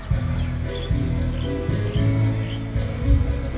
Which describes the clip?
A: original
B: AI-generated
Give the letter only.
A